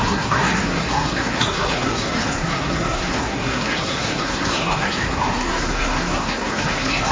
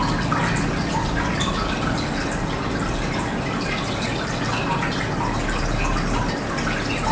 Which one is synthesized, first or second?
first